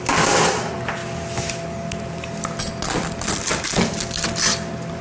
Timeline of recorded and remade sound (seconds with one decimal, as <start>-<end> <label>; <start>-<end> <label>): 0.0-5.0 recorded